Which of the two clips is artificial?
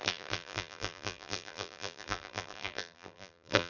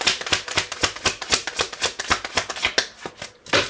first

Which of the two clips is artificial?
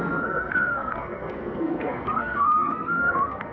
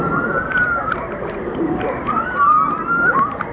first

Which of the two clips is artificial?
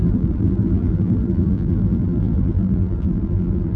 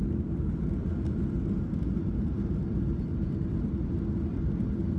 first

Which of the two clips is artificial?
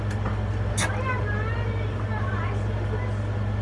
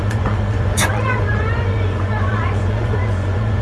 second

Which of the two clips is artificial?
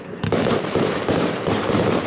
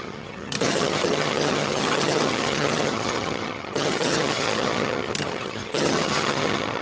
second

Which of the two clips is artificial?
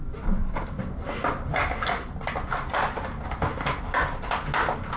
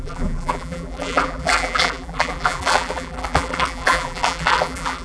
second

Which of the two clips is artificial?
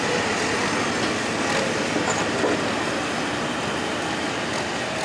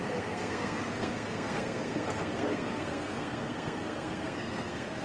second